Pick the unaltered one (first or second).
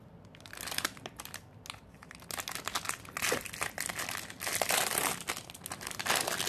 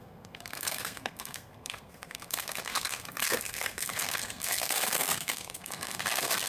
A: first